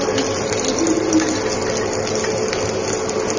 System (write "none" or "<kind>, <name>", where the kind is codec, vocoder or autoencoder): none